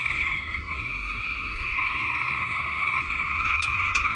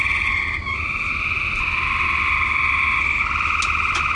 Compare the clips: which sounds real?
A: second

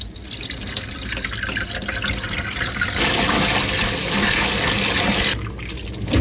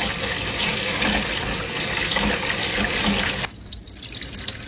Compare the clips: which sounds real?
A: first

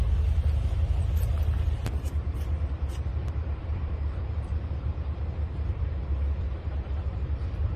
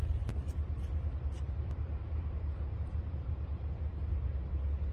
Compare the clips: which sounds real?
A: second